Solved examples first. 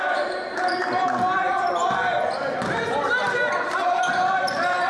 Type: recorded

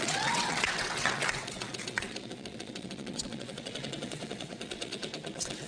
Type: remade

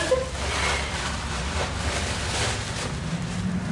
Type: remade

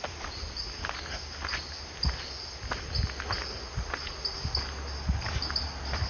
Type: recorded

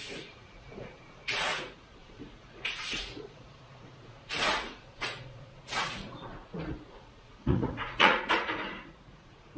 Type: remade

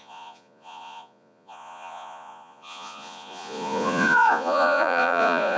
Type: remade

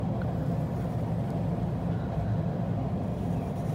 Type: recorded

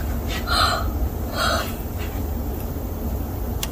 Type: recorded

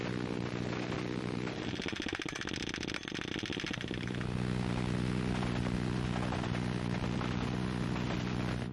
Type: recorded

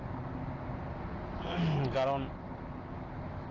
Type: recorded